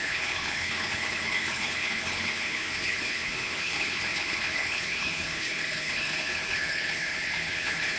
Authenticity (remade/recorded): remade